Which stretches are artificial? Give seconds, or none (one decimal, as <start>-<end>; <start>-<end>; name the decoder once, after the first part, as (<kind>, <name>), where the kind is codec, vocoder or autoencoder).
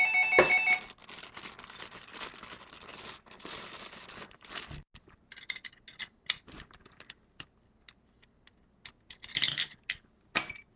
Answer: none